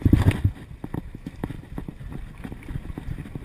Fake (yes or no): yes